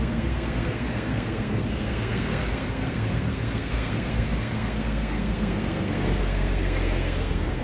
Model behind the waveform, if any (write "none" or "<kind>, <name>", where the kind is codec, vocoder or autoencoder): codec, SNAC